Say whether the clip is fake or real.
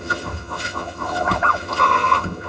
fake